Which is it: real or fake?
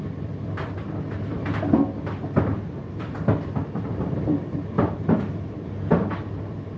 fake